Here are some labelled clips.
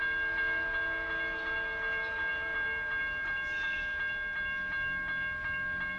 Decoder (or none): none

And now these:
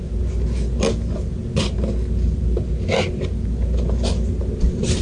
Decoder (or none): none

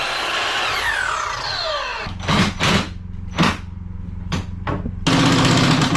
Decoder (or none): none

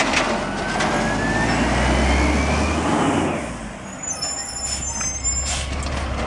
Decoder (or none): none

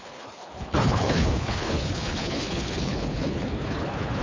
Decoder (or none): codec, HILCodec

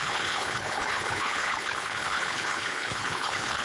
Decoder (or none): codec, HILCodec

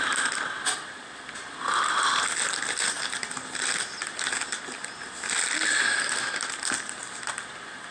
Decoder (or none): none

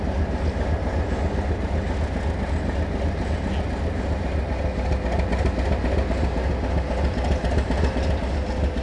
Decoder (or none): none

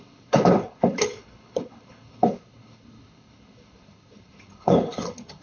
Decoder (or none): codec, HILCodec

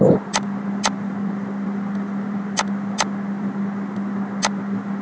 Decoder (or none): none